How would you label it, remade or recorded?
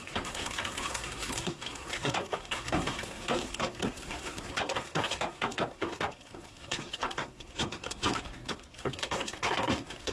remade